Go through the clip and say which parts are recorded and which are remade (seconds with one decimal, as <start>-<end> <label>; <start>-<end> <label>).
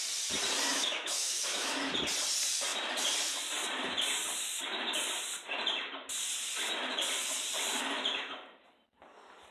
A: 0.0-0.7 recorded; 0.7-1.9 remade; 1.9-9.5 recorded